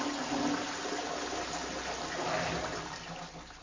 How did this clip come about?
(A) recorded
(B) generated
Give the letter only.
A